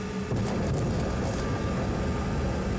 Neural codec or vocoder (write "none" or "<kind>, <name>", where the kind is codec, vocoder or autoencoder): none